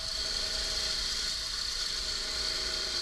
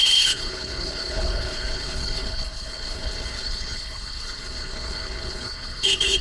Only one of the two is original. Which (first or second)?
first